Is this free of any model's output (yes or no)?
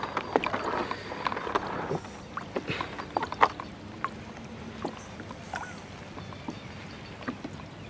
yes